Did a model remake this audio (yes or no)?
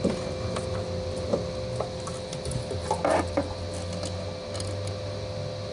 no